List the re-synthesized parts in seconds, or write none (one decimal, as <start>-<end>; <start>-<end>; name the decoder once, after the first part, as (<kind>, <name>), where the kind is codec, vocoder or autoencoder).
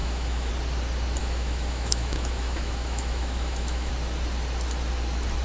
0.0-0.5 (autoencoder, DAC-VAE); 1.2-3.9